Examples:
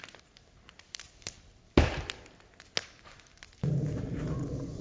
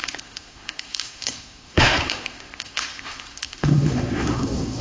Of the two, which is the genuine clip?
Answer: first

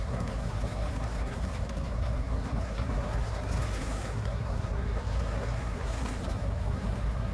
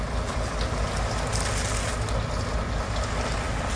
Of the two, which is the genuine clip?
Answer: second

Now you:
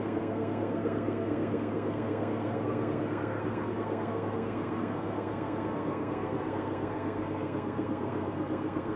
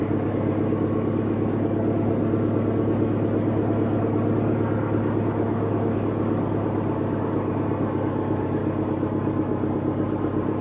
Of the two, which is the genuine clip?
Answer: second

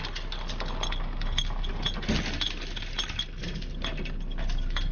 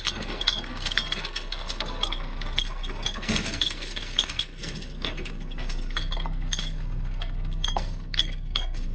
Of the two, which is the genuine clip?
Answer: first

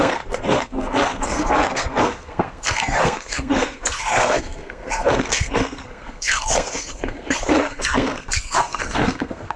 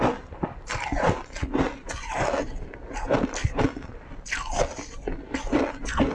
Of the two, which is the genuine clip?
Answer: second